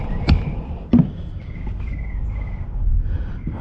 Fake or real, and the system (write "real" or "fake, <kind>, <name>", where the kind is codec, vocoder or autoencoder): real